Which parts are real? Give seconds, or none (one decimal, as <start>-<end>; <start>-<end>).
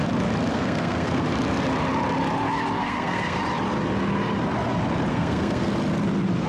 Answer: 0.0-0.5; 1.2-2.8; 3.4-5.1; 5.7-6.5